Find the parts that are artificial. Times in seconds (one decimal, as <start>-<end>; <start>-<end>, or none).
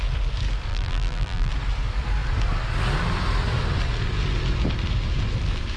0.7-1.5